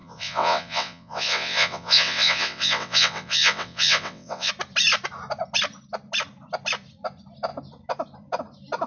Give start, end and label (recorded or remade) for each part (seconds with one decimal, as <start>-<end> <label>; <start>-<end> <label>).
0.0-4.5 remade; 4.5-8.9 recorded